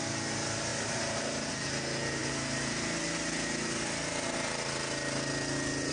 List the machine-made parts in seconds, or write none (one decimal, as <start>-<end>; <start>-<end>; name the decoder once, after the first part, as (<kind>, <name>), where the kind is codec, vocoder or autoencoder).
none